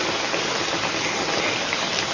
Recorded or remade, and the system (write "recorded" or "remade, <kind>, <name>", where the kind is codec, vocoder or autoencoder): recorded